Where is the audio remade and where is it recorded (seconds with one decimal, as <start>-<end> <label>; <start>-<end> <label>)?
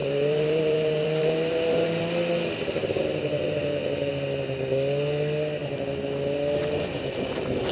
0.0-2.0 remade; 2.0-3.0 recorded; 3.0-4.1 remade; 4.1-7.7 recorded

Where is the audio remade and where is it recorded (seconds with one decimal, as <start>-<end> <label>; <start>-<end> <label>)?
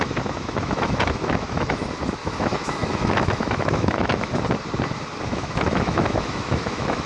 0.0-1.8 remade; 1.8-2.2 recorded; 2.2-4.3 remade; 4.3-5.3 recorded; 5.3-7.1 remade